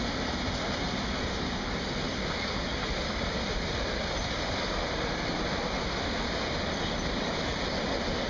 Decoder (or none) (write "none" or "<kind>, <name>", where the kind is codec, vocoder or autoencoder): none